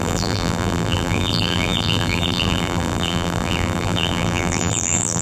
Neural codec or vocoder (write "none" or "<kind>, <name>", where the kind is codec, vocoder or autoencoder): vocoder, BigVGAN v2